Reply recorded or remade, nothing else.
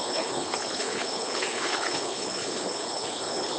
remade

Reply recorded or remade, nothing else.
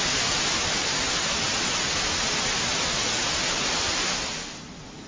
recorded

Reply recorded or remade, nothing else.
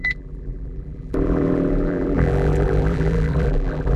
remade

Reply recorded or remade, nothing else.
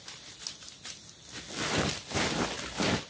recorded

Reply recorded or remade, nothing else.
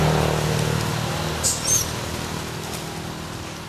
recorded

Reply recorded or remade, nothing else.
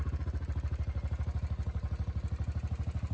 recorded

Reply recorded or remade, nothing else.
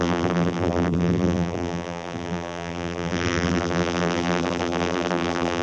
remade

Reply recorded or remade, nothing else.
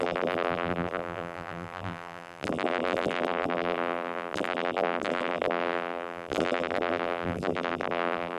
remade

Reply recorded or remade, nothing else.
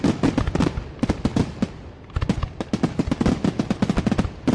recorded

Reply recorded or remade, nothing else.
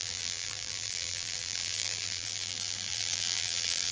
remade